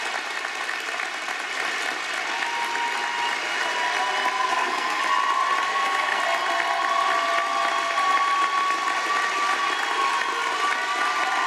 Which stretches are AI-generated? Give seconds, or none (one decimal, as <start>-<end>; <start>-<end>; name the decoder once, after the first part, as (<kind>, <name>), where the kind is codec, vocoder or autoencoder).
4.5-5.0 (codec, SNAC); 5.7-6.2